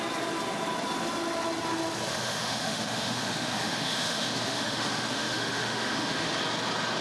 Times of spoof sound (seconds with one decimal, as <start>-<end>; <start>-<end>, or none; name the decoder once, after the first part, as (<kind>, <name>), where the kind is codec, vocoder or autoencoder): 2.1-6.3 (autoencoder, DAC-VAE)